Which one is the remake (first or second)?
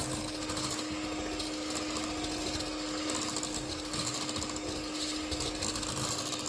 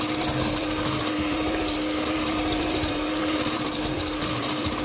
second